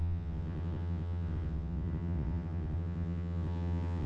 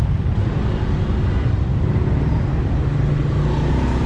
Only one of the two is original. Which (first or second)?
second